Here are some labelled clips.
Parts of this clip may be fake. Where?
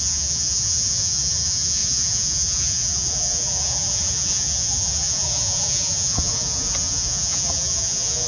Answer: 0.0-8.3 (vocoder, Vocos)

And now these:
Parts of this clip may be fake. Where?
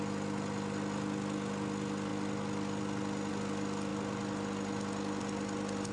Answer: none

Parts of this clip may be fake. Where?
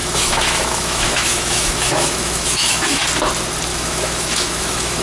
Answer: 0.0-3.0 (autoencoder, DAC-VAE); 3.7-5.0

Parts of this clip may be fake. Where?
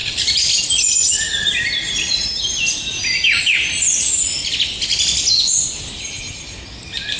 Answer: 0.0-2.4 (vocoder, BigVGAN v2); 4.9-5.9